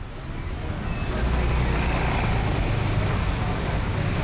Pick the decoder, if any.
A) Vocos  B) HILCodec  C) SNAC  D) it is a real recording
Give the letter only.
D